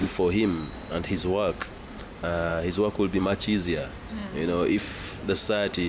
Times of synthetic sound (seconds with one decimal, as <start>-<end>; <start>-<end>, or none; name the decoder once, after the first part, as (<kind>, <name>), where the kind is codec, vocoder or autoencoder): 0.9-2.5 (vocoder, BigVGAN v2); 3.2-4.2